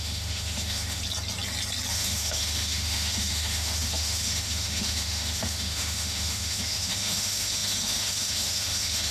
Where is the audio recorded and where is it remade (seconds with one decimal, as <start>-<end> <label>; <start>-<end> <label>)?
0.0-1.0 remade; 1.0-1.9 recorded; 1.9-9.1 remade